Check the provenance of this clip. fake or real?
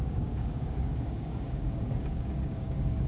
fake